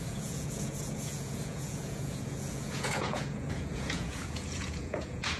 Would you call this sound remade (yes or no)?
yes